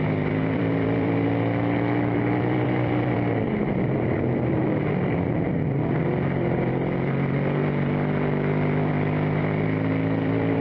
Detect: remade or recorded remade